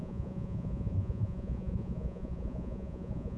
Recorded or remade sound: remade